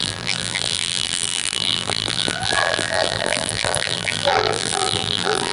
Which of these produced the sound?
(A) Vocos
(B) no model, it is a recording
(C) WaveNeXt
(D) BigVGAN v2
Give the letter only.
D